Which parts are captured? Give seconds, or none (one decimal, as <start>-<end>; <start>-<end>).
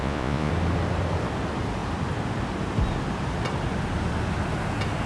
0.5-5.1